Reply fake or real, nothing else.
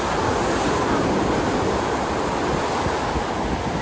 real